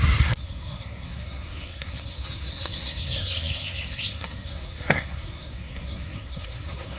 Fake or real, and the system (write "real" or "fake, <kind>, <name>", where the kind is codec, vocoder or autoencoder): fake, codec, SNAC